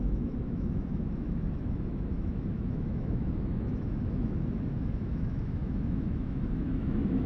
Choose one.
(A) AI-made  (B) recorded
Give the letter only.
A